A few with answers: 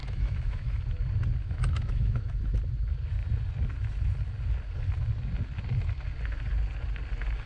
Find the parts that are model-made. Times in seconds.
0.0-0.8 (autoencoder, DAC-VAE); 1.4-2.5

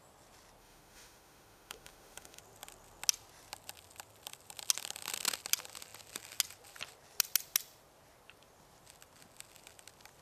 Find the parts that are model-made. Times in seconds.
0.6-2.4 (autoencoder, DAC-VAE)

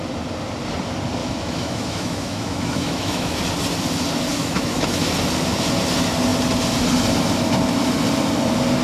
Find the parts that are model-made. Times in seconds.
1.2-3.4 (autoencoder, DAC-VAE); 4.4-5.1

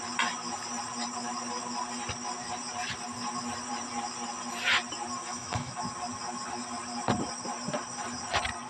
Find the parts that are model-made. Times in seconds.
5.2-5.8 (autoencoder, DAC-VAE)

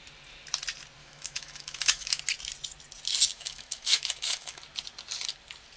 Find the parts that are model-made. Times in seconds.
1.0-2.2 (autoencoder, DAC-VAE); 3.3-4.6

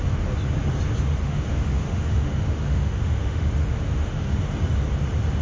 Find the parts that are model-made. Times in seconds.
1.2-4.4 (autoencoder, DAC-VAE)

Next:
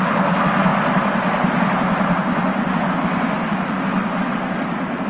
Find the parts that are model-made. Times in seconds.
none

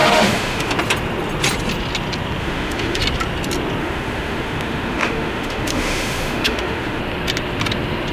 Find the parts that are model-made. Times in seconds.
0.0-0.7 (autoencoder, DAC-VAE); 2.4-3.0; 3.8-7.0